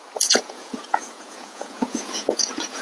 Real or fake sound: fake